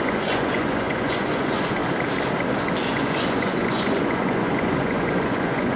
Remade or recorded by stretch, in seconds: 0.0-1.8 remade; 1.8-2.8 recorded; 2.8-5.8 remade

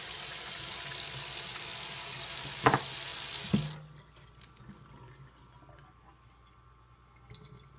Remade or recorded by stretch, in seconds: 0.0-7.8 recorded

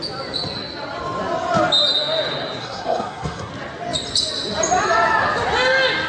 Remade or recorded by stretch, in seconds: 0.0-2.6 recorded; 2.6-3.5 remade; 3.5-6.1 recorded

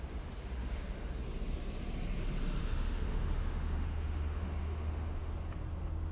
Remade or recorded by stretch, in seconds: 0.0-0.6 recorded; 0.6-1.1 remade; 1.1-2.6 recorded; 2.6-5.3 remade; 5.3-6.1 recorded